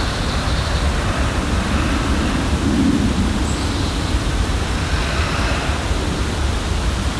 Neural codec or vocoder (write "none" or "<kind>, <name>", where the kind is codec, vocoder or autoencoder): none